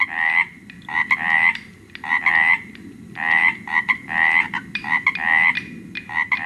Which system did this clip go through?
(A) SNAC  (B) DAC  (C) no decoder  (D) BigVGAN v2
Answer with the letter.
C